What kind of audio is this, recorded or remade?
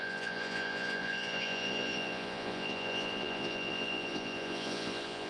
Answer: remade